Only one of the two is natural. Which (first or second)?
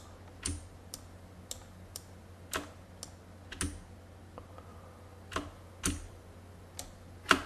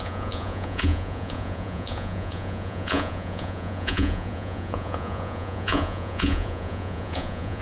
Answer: first